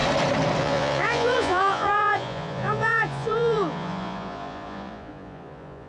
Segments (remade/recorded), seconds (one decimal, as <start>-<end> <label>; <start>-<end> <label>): 0.0-0.6 recorded; 0.6-5.9 remade